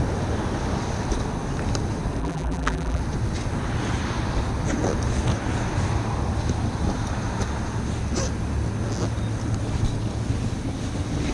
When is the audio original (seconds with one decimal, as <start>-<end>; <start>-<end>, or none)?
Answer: 0.0-2.2; 3.0-11.3